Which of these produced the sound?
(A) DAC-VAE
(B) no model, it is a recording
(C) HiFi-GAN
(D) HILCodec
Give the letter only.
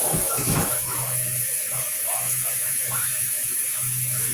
A